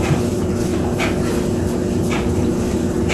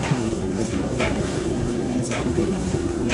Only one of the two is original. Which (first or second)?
first